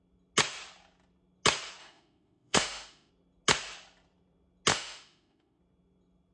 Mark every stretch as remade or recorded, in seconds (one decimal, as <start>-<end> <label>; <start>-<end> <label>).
0.0-1.8 recorded; 1.8-3.1 remade; 3.1-4.7 recorded; 4.7-5.6 remade; 5.6-6.3 recorded